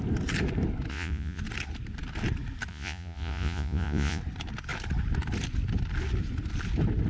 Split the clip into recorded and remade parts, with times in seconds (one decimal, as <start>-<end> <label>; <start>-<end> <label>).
0.0-0.9 recorded; 0.9-1.4 remade; 1.4-2.7 recorded; 2.7-4.2 remade; 4.2-7.1 recorded